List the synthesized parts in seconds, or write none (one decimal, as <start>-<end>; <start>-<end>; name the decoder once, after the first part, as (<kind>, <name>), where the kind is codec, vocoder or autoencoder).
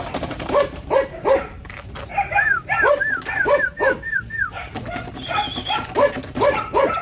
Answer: 0.0-7.0 (vocoder, BigVGAN v2)